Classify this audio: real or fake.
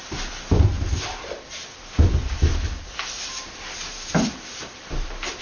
fake